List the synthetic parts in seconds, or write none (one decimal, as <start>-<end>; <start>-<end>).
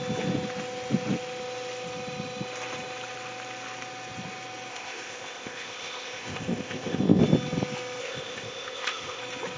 4.7-7.2; 8.0-9.2